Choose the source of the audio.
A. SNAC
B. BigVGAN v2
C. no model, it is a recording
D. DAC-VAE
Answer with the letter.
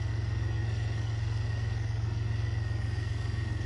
A